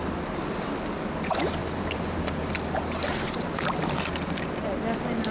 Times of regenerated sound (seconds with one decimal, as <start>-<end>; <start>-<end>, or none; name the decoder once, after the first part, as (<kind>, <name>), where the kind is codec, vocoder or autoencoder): 1.6-2.5 (vocoder, BigVGAN v2); 3.0-3.6